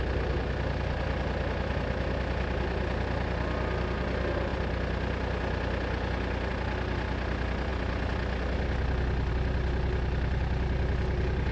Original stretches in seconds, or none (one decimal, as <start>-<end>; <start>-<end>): 0.0-11.5